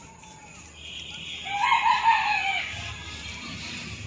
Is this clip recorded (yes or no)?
yes